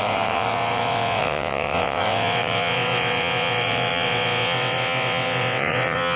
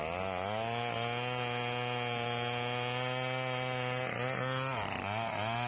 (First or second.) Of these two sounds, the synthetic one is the first